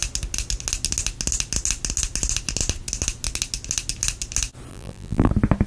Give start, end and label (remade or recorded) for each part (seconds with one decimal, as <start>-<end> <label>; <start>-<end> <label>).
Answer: 0.0-4.7 recorded; 4.7-5.3 remade; 5.3-5.7 recorded